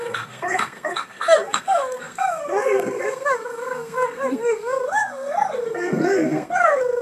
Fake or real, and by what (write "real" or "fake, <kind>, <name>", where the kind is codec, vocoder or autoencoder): fake, codec, SNAC